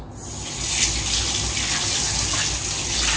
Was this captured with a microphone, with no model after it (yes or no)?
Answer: yes